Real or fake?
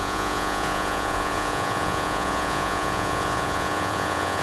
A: fake